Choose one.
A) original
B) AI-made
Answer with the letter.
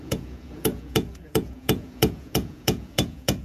B